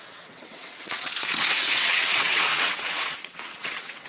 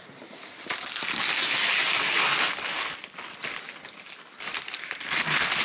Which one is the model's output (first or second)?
first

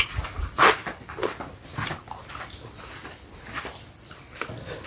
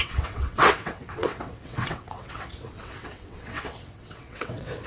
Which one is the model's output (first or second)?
second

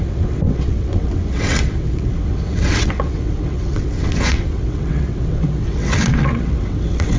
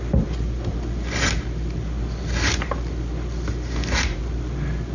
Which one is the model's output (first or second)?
first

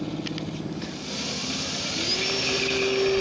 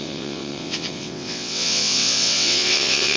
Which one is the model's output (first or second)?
second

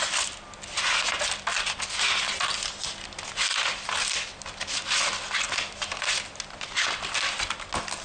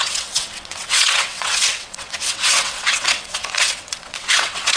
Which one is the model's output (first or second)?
second